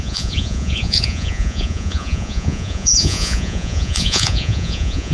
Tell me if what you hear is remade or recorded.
remade